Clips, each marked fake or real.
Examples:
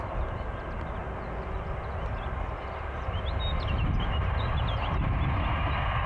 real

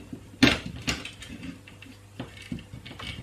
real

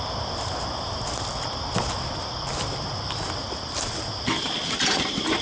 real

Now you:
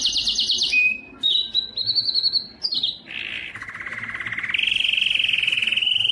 real